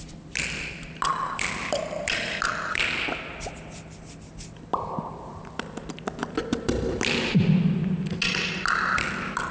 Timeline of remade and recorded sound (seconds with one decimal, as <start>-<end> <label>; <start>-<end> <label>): 0.0-9.5 recorded